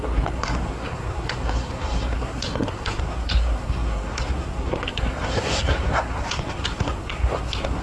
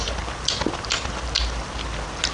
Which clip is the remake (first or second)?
first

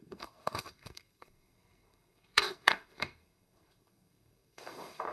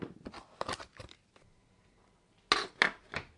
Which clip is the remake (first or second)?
first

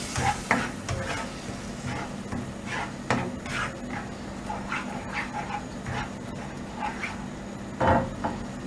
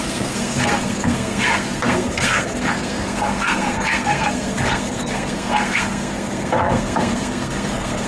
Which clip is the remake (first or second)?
second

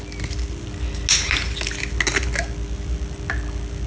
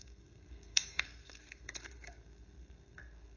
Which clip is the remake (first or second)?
second